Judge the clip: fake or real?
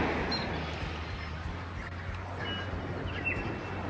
real